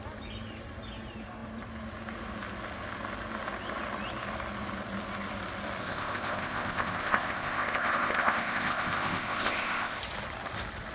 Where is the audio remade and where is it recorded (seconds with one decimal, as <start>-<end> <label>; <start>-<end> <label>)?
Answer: 0.0-5.8 recorded; 5.8-10.0 remade; 10.0-10.9 recorded